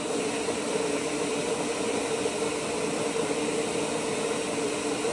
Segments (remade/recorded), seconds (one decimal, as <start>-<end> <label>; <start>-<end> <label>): 0.0-5.1 recorded

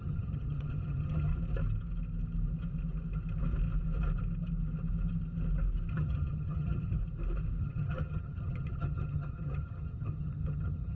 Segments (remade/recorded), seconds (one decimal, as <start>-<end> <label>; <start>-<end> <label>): 0.0-1.3 remade; 1.3-5.9 recorded; 5.9-7.0 remade; 7.0-7.6 recorded; 7.6-10.9 remade

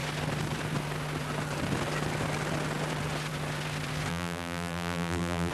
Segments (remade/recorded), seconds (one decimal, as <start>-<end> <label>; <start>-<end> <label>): 0.0-4.1 recorded; 4.1-5.5 remade

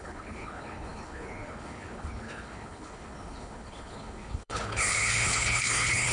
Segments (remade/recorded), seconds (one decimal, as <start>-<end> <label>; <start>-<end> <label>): 0.0-6.1 remade